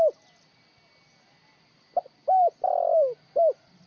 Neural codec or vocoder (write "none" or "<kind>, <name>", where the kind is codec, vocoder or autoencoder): none